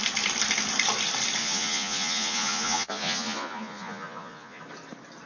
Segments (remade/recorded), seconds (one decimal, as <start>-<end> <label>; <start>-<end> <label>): 0.0-1.4 recorded; 1.4-4.6 remade; 4.6-5.3 recorded